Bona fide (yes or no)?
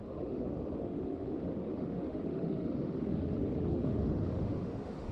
no